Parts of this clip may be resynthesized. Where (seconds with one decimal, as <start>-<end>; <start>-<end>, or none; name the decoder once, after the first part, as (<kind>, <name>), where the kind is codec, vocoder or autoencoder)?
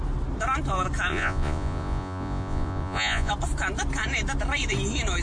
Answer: 1.1-3.3 (vocoder, Vocos)